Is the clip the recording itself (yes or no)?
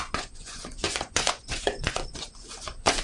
no